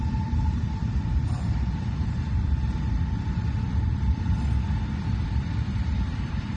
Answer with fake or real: fake